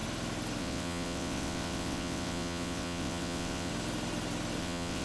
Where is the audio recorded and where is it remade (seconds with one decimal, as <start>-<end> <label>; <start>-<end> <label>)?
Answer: 0.0-0.6 recorded; 0.6-3.7 remade; 3.7-4.6 recorded; 4.6-5.0 remade